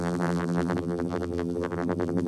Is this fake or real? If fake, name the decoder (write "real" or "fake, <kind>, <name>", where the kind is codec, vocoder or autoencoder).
fake, vocoder, BigVGAN v2